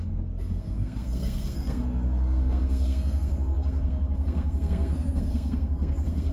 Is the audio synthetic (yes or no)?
yes